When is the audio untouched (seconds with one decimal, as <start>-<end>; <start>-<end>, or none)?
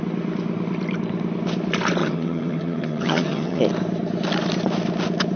0.0-2.0; 3.6-5.4